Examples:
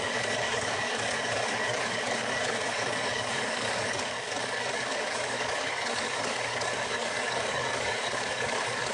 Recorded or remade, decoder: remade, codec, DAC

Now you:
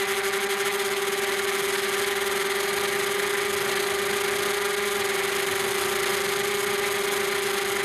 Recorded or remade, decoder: recorded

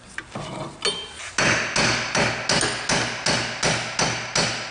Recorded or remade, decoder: recorded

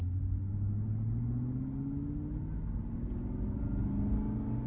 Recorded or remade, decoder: recorded